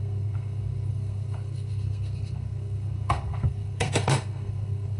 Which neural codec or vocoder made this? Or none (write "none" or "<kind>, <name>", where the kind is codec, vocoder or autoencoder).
codec, SNAC